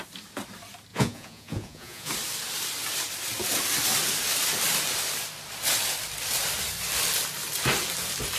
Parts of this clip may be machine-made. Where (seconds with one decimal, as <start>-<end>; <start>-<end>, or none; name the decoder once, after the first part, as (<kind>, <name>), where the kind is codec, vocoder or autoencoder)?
0.9-2.1 (vocoder, Vocos)